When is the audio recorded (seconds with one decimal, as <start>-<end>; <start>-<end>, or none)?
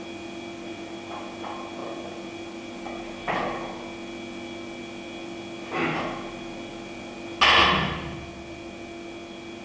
0.0-9.6